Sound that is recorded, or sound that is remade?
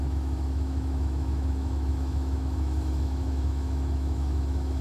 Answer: remade